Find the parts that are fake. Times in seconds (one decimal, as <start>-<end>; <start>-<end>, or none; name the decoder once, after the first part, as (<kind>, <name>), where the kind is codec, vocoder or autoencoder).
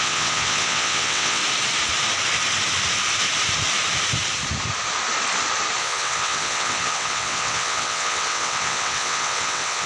0.0-1.4 (vocoder, WaveNeXt); 5.8-9.9